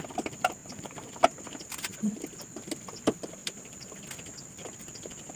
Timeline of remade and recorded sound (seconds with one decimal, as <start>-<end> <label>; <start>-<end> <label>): 0.0-0.6 recorded; 0.6-1.1 remade; 1.1-3.4 recorded; 3.4-4.0 remade; 4.0-5.4 recorded